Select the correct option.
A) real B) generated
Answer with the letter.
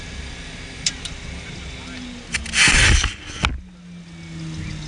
A